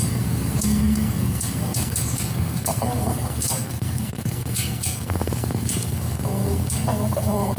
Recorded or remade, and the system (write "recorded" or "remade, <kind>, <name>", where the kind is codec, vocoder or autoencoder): remade, codec, SNAC